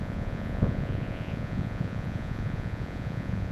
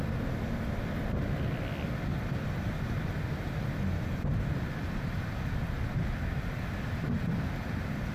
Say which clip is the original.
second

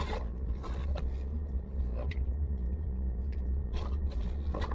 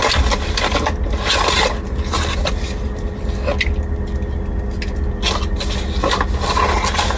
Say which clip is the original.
second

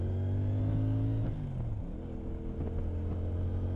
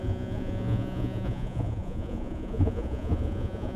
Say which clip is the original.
first